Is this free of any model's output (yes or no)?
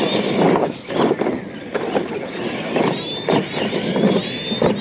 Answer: yes